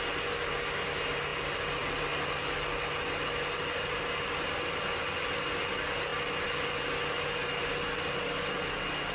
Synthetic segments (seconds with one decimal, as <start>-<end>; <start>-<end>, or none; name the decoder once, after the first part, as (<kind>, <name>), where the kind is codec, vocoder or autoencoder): none